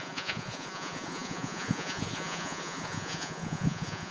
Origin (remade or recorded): remade